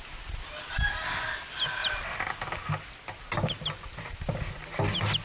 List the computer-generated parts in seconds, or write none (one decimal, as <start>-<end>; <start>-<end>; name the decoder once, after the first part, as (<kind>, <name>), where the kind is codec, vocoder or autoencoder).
none

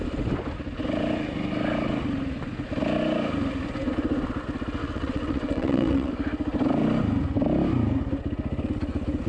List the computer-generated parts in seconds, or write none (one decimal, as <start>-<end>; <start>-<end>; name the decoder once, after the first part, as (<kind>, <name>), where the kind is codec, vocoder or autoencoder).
4.8-6.1 (vocoder, WaveNeXt)